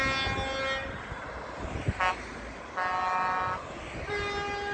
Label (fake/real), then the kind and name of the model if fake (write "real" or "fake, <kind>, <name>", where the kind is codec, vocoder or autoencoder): real